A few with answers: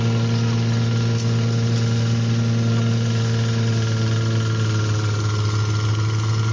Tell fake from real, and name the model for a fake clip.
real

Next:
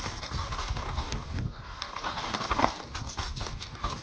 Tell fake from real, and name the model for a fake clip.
fake, codec, DAC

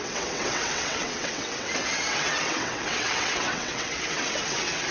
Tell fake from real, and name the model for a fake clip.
fake, vocoder, WaveNeXt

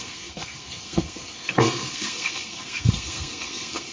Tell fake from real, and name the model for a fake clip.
fake, codec, SNAC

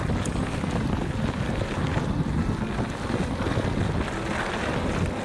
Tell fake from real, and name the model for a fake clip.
real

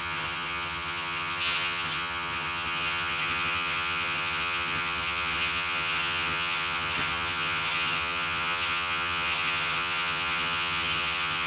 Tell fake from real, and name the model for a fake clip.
fake, vocoder, HiFi-GAN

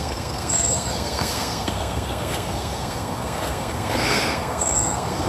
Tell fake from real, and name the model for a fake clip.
fake, codec, SNAC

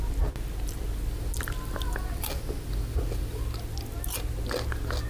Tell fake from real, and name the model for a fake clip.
real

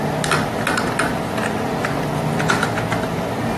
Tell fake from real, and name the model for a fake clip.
real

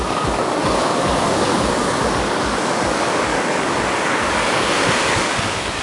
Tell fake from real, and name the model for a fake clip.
fake, codec, DAC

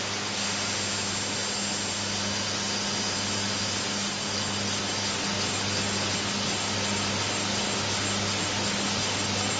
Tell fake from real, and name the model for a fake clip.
real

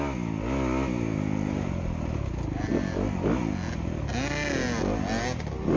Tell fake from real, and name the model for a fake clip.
real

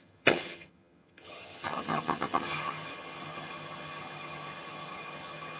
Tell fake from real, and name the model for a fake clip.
fake, vocoder, HiFi-GAN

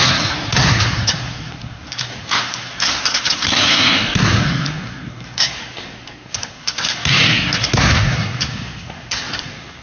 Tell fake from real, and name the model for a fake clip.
fake, codec, SNAC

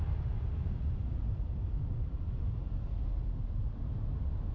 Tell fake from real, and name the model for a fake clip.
real